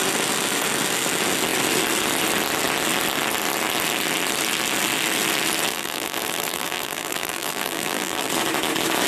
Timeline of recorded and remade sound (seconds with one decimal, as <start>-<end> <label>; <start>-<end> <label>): 0.0-5.7 recorded; 5.7-8.3 remade; 8.3-9.1 recorded